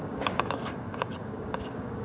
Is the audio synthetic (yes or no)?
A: yes